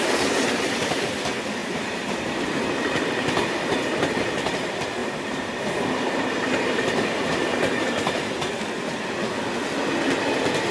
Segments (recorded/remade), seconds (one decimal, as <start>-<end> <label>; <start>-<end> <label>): 0.0-1.6 recorded; 1.6-3.1 remade; 3.1-5.0 recorded; 5.0-8.6 remade; 8.6-10.7 recorded